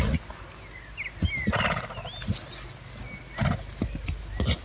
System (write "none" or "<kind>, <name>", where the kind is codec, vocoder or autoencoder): none